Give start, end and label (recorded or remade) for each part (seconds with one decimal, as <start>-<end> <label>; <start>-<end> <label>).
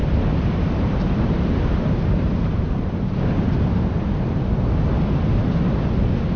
0.0-3.8 remade; 3.8-6.4 recorded